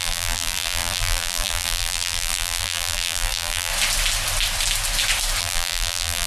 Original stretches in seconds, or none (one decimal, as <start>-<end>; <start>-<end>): 3.7-5.4